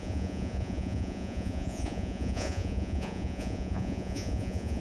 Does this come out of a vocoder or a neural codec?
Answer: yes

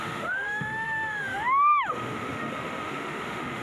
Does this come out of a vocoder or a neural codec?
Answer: yes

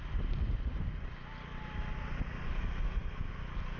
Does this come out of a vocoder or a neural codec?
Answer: no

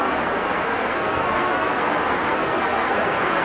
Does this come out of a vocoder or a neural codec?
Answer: yes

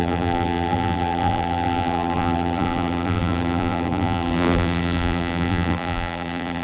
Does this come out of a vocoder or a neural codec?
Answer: yes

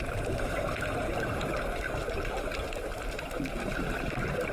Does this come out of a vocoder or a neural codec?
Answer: yes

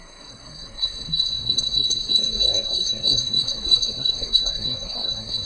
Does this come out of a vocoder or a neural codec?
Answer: yes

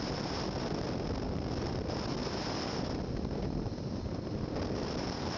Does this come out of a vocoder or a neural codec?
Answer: no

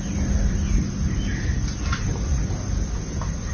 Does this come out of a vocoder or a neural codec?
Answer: no